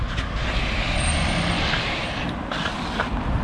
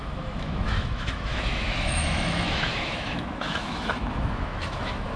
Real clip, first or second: first